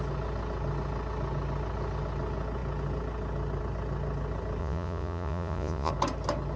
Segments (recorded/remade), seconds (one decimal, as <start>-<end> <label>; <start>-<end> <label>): 0.0-4.6 recorded; 4.6-5.9 remade; 5.9-6.6 recorded